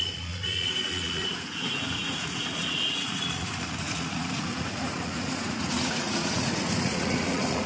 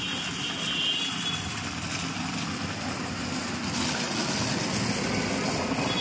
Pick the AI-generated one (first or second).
first